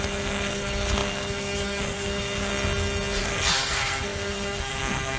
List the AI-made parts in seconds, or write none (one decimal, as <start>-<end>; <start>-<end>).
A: 0.0-2.5; 3.2-5.2